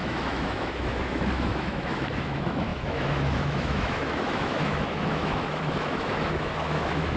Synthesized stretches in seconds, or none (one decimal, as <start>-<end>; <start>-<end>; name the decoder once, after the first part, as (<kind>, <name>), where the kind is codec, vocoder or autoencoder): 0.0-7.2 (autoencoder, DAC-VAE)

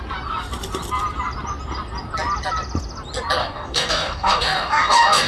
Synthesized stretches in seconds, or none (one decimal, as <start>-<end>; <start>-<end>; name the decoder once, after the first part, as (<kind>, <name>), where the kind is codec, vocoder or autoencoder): 3.4-5.3 (codec, DAC)

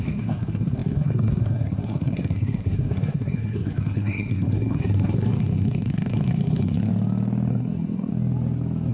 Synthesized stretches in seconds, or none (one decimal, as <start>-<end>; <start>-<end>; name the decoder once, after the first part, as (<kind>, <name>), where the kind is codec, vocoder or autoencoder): 0.0-6.9 (codec, SNAC); 7.5-8.1

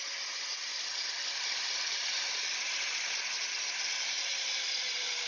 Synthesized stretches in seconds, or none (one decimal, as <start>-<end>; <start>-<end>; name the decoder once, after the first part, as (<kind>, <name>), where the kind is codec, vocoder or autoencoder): none

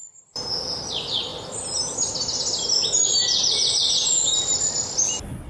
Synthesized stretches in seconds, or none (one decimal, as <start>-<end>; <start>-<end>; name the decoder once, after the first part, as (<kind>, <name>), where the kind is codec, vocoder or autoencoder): none

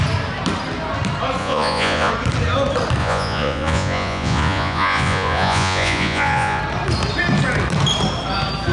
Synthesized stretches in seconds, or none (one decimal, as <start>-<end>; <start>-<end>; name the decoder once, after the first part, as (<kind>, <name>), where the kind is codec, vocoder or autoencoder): 1.4-2.1 (vocoder, Vocos); 3.0-6.6

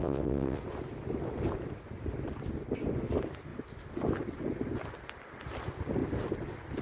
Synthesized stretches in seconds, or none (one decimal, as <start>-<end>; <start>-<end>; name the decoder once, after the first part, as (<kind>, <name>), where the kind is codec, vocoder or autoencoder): 0.0-0.6 (vocoder, WaveNeXt)

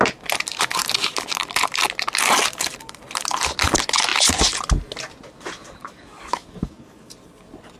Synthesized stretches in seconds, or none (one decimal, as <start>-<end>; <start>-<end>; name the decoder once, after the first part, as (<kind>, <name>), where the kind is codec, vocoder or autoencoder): 5.8-7.1 (codec, DAC)